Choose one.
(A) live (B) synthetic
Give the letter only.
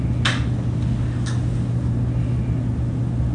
A